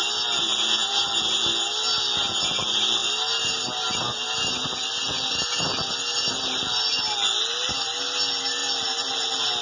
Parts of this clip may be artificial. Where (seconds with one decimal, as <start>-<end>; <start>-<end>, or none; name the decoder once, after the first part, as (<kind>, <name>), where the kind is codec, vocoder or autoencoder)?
none